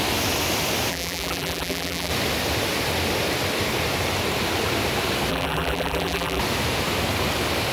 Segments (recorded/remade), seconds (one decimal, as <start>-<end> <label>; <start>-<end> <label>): 0.0-0.9 recorded; 0.9-2.1 remade; 2.1-5.3 recorded; 5.3-6.4 remade; 6.4-7.7 recorded